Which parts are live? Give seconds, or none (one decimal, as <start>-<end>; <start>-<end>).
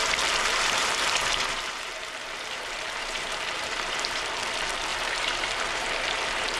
0.0-0.5; 4.3-4.9